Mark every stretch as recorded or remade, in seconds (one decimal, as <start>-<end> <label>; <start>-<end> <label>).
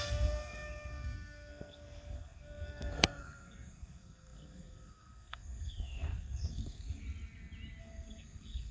0.0-7.0 remade; 7.0-7.8 recorded; 7.8-8.7 remade